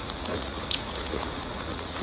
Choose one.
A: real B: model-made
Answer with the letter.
B